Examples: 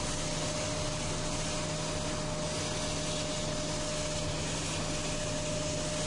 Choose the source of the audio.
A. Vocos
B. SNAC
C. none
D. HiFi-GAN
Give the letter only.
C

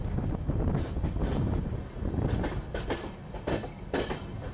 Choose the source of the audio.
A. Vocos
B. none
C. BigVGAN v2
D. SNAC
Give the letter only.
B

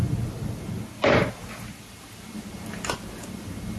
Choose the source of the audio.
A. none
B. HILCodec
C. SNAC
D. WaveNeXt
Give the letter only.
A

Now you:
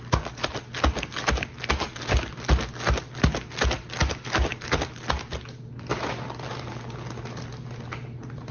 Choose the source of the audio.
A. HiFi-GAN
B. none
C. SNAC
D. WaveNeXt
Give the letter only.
B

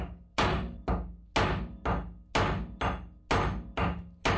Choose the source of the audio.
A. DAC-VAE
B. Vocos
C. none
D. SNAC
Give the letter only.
C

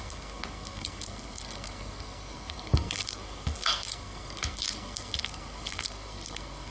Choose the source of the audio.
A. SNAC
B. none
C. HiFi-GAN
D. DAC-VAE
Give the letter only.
A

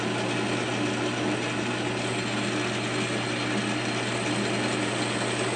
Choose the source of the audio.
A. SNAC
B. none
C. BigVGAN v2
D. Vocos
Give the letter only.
B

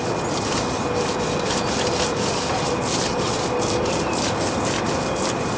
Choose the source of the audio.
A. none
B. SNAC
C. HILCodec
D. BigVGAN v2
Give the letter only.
A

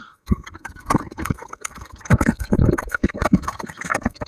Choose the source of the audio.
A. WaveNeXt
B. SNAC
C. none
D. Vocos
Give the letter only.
B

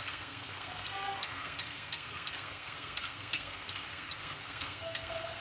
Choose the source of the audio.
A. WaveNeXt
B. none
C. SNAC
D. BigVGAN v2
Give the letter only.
C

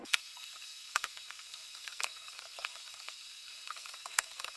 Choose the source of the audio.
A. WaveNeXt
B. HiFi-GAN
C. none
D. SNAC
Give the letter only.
D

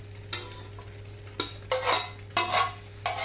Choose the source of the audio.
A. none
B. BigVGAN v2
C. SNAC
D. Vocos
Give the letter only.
A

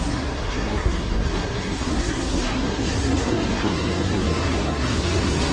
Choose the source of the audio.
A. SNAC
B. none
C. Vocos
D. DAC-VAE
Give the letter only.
A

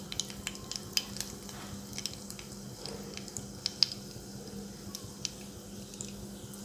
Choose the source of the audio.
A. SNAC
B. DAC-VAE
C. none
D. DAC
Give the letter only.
C